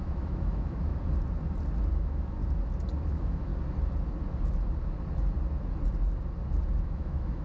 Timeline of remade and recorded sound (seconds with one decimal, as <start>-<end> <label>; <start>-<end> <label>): 0.0-0.9 remade; 0.9-1.9 recorded; 1.9-2.4 remade; 2.4-3.0 recorded; 3.0-3.5 remade; 3.5-6.8 recorded; 6.8-7.4 remade